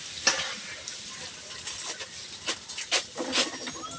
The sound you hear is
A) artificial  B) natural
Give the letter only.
B